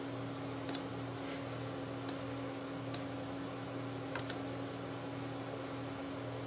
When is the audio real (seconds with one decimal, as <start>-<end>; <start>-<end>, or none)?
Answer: 0.0-6.5